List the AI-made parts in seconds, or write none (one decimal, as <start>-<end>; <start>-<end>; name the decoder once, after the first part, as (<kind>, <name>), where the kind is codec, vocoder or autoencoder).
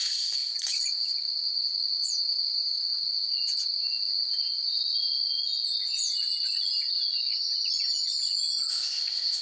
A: 0.0-0.5 (codec, ZipCodec); 8.7-9.4